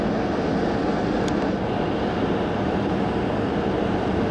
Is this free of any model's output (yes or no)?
yes